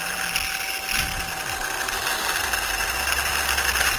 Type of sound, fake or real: real